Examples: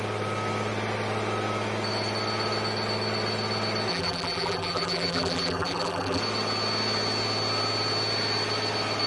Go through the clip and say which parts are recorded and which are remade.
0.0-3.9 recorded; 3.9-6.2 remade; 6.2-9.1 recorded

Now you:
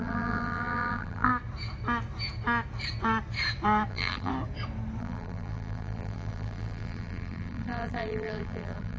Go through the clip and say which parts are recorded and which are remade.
0.0-1.3 remade; 1.3-3.9 recorded; 3.9-4.3 remade; 4.3-5.0 recorded; 5.0-9.0 remade

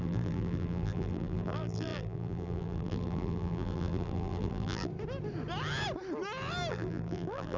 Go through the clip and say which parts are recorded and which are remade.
0.0-4.9 remade; 4.9-6.7 recorded; 6.7-7.6 remade

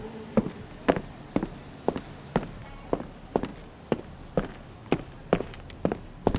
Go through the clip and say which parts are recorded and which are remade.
0.0-6.4 recorded

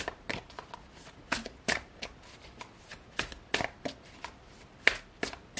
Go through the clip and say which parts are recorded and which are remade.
0.0-5.6 recorded

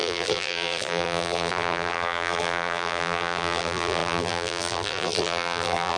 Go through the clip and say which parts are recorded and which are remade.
0.0-6.0 remade

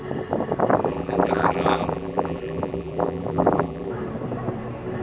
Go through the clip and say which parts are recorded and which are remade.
0.0-0.9 recorded; 0.9-3.9 remade; 3.9-5.0 recorded